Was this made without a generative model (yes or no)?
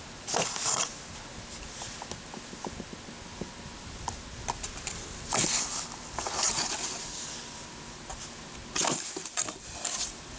yes